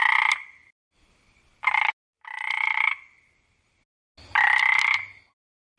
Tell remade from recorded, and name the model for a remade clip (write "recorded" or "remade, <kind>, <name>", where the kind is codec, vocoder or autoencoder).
recorded